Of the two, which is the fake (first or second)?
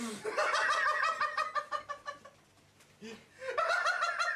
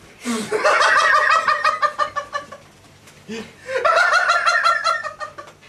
second